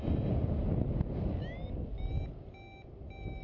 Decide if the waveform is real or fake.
real